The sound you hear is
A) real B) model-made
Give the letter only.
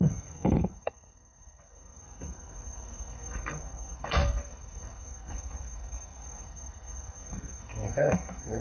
B